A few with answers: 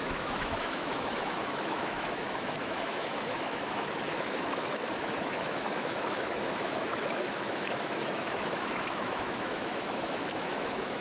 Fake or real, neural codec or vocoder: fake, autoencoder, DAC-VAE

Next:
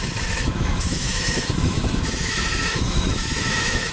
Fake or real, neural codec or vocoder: fake, autoencoder, DAC-VAE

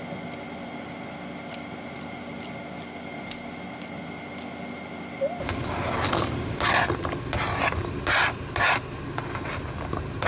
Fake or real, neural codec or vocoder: real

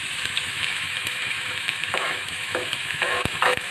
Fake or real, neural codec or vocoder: fake, autoencoder, DAC-VAE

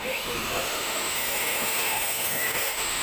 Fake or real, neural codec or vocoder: fake, autoencoder, DAC-VAE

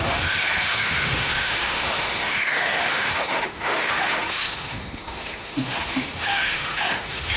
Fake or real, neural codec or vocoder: fake, autoencoder, DAC-VAE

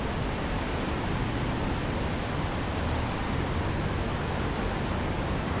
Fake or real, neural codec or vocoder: real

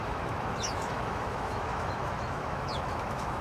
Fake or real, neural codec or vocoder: fake, autoencoder, DAC-VAE